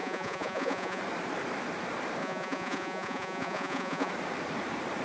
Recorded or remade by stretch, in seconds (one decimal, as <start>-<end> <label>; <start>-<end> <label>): 0.0-1.0 remade; 1.0-2.2 recorded; 2.2-4.1 remade; 4.1-5.0 recorded